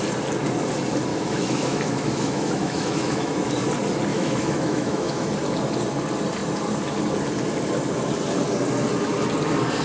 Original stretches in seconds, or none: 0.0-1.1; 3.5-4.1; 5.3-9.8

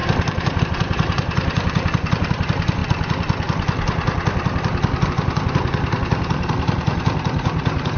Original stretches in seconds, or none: 2.8-5.1